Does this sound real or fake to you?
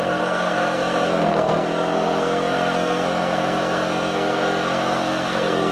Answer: fake